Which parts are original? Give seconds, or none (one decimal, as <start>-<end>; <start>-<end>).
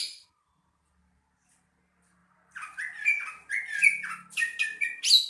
0.0-5.3